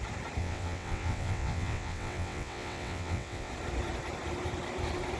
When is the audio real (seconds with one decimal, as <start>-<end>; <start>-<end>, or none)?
0.0-0.4; 3.5-5.2